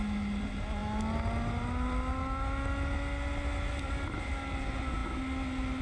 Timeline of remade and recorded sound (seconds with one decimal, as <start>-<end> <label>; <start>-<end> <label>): 0.0-5.8 recorded

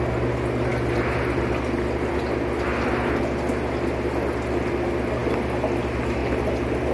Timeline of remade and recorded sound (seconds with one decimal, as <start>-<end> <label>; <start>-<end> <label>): 0.0-0.7 recorded; 0.7-2.1 remade; 2.1-5.2 recorded; 5.2-5.8 remade; 5.8-6.2 recorded; 6.2-6.9 remade

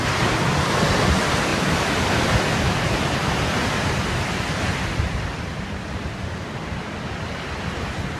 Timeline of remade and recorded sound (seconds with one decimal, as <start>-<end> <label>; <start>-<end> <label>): 0.0-1.5 recorded; 1.5-5.4 remade; 5.4-8.2 recorded

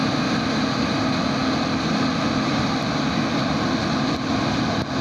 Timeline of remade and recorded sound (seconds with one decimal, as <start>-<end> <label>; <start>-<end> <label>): 0.0-0.9 remade; 0.9-5.0 recorded